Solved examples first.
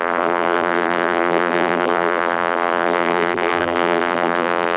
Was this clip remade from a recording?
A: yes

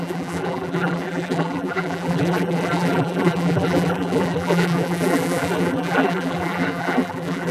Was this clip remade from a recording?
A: yes